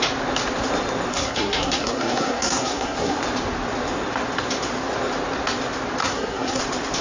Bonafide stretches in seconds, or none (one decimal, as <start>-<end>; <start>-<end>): 0.0-1.1; 3.2-6.0; 6.6-7.0